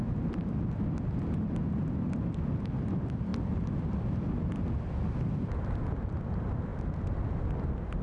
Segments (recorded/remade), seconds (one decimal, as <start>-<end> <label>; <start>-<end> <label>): 0.0-8.0 recorded